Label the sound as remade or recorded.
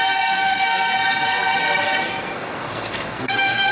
remade